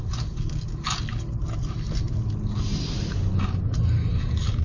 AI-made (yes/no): no